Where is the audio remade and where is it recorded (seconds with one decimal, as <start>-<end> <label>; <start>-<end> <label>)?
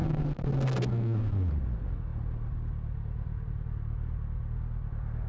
0.0-1.5 remade; 1.5-5.3 recorded